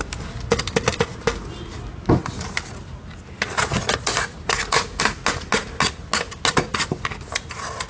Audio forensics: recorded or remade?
recorded